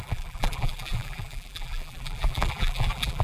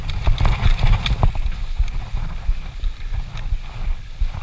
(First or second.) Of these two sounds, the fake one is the first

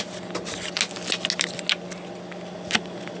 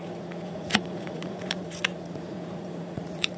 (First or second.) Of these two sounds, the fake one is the second